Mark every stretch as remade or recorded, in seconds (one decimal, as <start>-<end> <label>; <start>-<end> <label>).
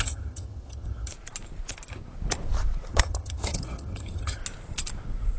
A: 0.0-1.1 remade; 1.1-2.9 recorded; 2.9-4.4 remade; 4.4-5.4 recorded